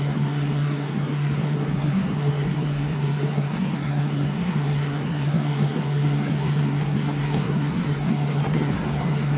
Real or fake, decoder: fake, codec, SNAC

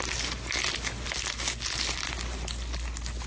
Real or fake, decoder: real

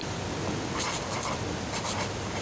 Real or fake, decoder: real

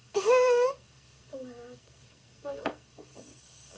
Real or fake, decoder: fake, codec, SNAC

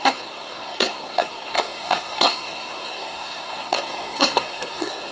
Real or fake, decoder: fake, codec, SNAC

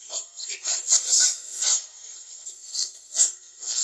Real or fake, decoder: fake, codec, SNAC